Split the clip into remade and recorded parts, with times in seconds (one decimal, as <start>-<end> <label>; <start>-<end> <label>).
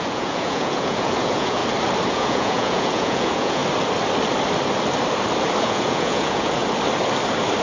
0.0-1.6 remade; 1.6-2.1 recorded; 2.1-3.6 remade; 3.6-5.6 recorded; 5.6-6.6 remade; 6.6-7.6 recorded